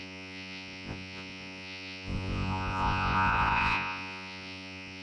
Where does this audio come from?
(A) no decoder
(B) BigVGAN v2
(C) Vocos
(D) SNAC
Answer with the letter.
C